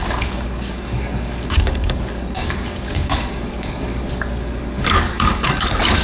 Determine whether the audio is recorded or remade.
remade